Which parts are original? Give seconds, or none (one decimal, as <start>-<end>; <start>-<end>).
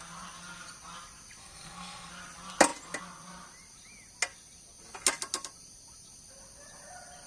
0.0-1.4; 2.1-7.3